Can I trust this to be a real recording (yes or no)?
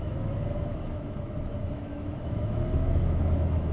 no